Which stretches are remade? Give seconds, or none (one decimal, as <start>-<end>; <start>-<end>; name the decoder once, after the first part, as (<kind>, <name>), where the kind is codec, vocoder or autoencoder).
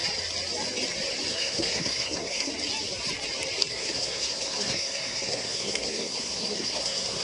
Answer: 1.3-2.5 (codec, SNAC); 3.7-7.2